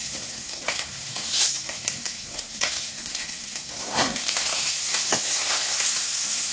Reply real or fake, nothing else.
fake